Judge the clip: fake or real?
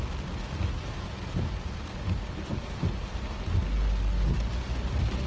real